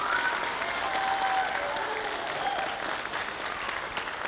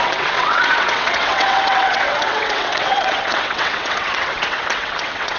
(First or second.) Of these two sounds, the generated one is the second